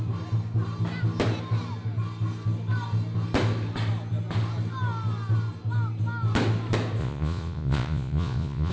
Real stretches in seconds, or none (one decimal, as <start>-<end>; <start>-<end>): 0.0-7.0